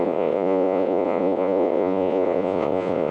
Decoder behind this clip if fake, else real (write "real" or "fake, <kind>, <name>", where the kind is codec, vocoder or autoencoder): fake, vocoder, Vocos